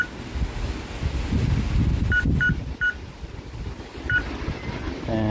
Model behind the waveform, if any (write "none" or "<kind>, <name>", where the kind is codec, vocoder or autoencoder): none